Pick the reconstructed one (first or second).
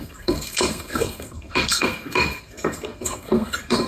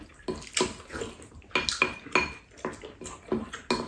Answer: first